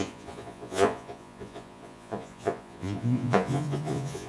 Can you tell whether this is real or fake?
fake